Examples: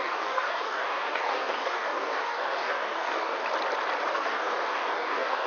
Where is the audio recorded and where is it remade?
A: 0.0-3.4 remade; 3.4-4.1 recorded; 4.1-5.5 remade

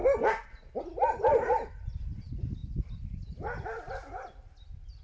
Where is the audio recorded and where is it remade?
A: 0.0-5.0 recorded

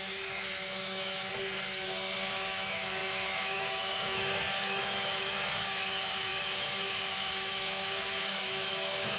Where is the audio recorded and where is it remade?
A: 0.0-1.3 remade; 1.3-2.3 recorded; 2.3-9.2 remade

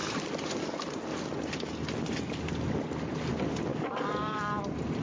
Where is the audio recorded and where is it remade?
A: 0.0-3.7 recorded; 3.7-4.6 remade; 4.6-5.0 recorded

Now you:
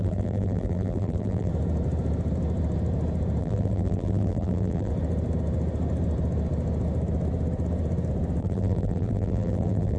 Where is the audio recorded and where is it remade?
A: 0.0-1.5 remade; 1.5-3.4 recorded; 3.4-4.9 remade; 4.9-8.4 recorded; 8.4-10.0 remade